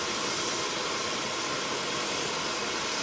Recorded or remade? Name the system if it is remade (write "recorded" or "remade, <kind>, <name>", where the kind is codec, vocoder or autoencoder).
recorded